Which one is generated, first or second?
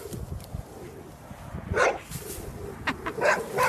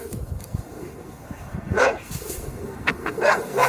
second